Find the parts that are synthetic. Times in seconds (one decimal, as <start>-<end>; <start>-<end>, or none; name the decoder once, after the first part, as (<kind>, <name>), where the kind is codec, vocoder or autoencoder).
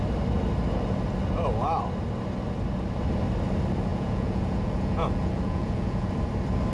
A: 3.9-6.1 (vocoder, Vocos)